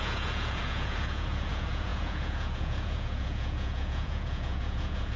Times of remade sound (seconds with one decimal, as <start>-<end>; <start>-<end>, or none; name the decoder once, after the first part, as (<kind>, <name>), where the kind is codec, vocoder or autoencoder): 0.0-5.2 (vocoder, Vocos)